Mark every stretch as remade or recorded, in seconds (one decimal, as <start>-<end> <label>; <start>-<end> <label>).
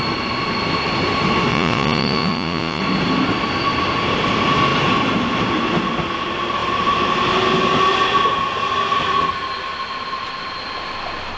0.0-1.5 recorded; 1.5-2.8 remade; 2.8-11.4 recorded